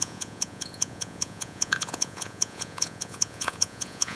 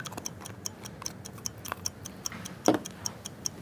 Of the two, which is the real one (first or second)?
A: second